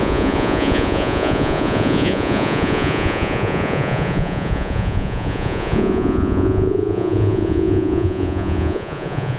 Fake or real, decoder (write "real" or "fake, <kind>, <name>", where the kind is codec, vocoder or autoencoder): fake, vocoder, Vocos